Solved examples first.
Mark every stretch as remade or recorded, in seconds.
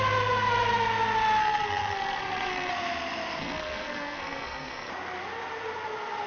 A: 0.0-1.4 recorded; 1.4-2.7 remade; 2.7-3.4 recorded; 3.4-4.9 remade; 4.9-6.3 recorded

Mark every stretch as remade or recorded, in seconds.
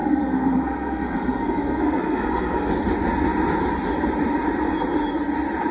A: 0.0-2.7 remade; 2.7-5.7 recorded